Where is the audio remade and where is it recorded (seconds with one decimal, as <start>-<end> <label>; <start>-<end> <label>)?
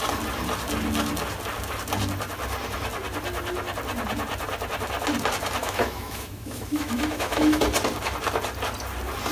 0.0-5.6 recorded; 5.6-7.6 remade; 7.6-9.3 recorded